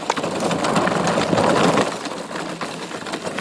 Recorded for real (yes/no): yes